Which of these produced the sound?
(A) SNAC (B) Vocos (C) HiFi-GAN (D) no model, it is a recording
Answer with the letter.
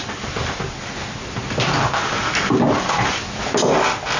D